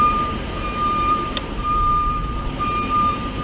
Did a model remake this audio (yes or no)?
yes